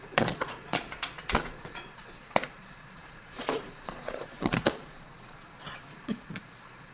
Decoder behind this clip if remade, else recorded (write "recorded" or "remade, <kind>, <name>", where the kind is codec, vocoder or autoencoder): remade, vocoder, Vocos